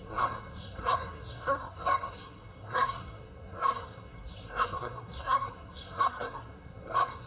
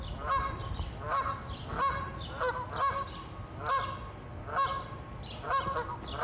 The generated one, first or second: first